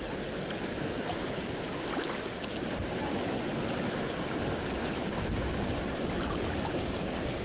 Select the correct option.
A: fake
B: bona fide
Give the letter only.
B